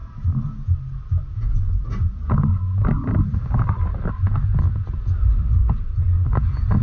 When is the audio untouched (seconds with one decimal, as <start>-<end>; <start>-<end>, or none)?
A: 0.0-6.8